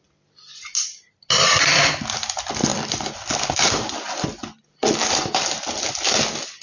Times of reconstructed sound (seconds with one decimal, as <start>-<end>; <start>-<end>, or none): 2.7-3.2